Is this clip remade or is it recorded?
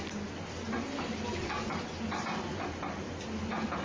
recorded